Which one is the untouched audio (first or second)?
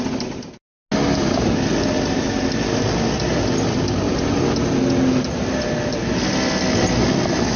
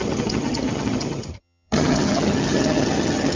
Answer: first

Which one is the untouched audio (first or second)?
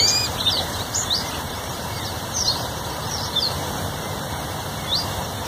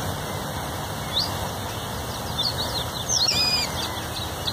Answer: second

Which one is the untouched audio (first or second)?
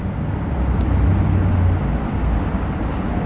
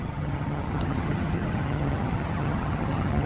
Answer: first